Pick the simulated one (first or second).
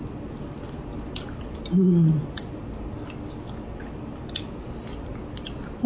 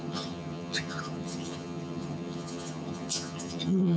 second